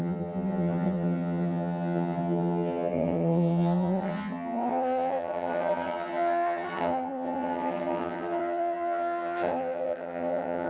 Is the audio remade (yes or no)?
yes